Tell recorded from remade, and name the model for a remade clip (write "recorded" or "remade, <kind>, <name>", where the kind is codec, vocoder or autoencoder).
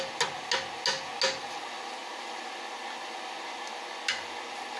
recorded